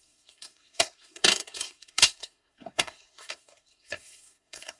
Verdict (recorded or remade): remade